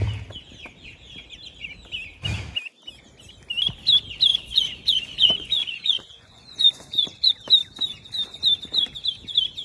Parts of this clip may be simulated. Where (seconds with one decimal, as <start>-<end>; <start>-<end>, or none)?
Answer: 4.3-7.3